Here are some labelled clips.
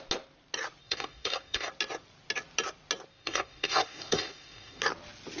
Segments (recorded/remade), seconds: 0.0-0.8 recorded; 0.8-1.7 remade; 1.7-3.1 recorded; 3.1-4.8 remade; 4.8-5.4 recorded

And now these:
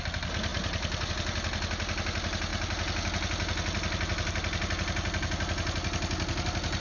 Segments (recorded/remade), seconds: 0.0-6.8 recorded

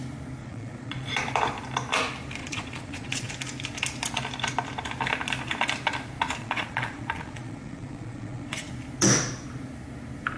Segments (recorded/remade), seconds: 0.0-0.4 recorded; 0.4-1.1 remade; 1.1-2.4 recorded; 2.4-3.3 remade; 3.3-6.4 recorded; 6.4-8.7 remade; 8.7-10.4 recorded

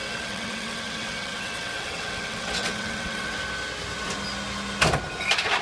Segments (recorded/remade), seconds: 0.0-3.4 remade; 3.4-5.6 recorded

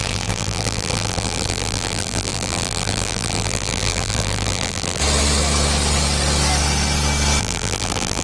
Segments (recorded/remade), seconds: 0.0-5.0 remade; 5.0-7.4 recorded; 7.4-8.2 remade